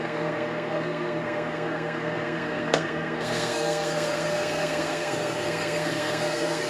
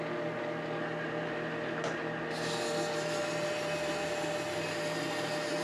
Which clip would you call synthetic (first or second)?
first